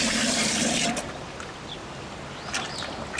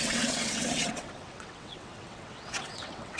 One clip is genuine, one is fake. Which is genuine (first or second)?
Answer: first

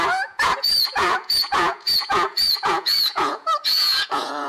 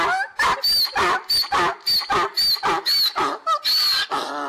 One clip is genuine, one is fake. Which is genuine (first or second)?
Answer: second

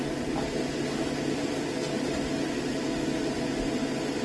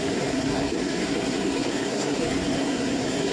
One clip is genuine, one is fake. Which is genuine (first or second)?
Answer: first